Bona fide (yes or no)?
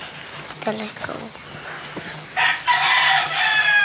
yes